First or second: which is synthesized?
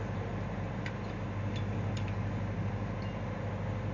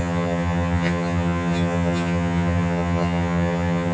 second